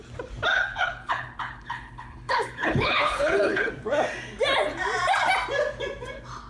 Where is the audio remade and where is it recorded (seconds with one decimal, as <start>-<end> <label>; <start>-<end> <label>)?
0.0-0.5 recorded; 0.5-3.7 remade; 3.7-6.5 recorded